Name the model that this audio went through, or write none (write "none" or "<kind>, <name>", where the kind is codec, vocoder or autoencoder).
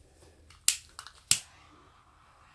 none